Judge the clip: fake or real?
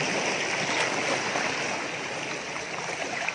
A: real